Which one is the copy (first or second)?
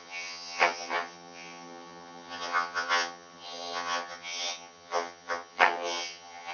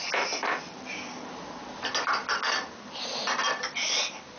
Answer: first